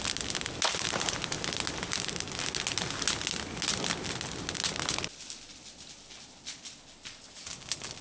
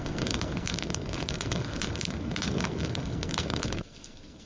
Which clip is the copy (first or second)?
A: second